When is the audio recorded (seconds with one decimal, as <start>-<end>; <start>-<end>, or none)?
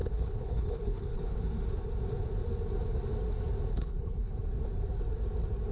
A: 1.4-3.7; 4.3-5.7